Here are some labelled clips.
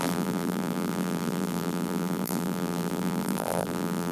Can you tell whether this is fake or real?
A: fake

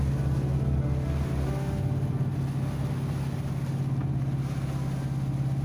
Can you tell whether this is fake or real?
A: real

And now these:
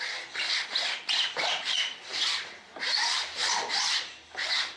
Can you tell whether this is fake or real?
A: real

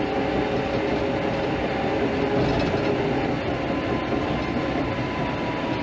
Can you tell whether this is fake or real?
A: real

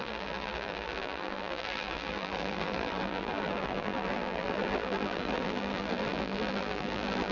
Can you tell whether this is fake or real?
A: fake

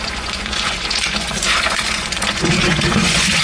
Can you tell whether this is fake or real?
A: fake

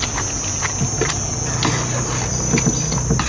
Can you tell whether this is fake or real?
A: real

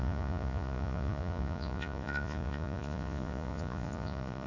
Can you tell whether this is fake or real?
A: fake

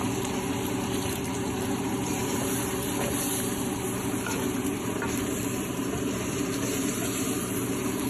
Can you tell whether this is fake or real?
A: fake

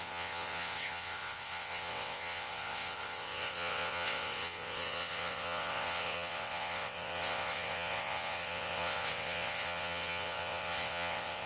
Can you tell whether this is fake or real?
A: fake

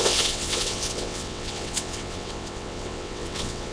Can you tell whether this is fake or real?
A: fake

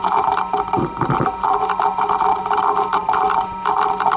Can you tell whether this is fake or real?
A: real